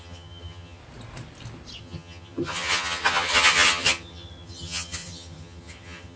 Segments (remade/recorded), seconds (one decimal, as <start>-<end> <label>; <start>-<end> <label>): 0.0-0.8 remade; 0.8-1.8 recorded; 1.8-6.2 remade